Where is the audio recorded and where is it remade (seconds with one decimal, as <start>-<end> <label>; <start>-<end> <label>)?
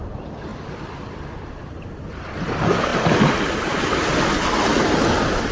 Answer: 0.0-5.5 recorded